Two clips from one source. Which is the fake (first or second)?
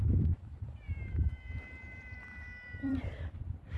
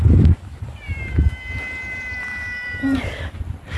first